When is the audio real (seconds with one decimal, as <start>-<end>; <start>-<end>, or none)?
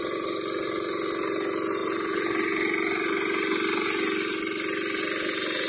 0.0-5.7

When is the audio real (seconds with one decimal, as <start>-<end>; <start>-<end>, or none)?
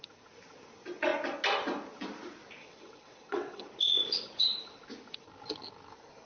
0.0-2.6; 3.6-6.3